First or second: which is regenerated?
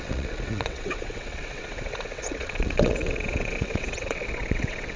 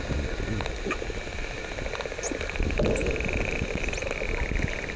first